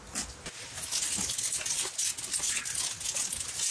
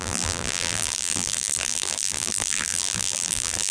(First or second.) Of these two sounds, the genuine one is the first